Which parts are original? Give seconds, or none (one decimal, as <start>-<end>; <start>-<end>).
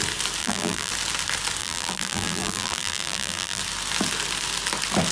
0.0-0.4; 0.9-1.6; 3.6-5.1